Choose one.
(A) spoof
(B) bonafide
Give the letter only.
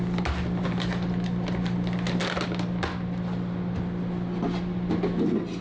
B